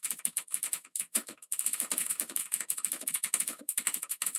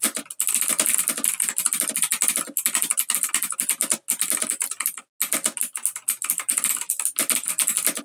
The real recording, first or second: second